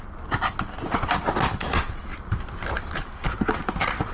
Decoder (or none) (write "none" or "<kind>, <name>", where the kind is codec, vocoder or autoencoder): none